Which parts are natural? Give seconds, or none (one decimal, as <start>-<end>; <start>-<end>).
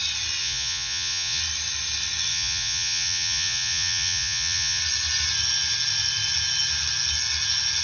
0.0-0.4; 1.4-2.3; 4.8-7.8